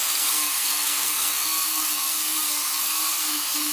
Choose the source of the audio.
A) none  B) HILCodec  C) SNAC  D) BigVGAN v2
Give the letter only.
C